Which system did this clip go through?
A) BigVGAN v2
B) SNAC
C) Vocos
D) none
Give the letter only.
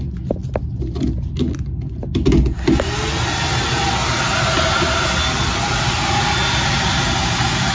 D